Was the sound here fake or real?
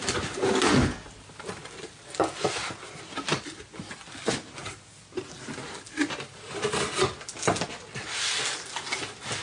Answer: real